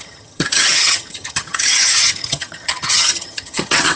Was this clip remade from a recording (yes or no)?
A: yes